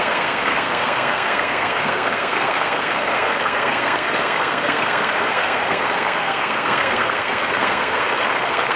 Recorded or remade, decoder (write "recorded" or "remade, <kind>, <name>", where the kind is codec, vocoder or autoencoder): remade, codec, SNAC